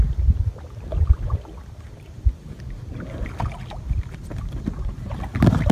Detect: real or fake real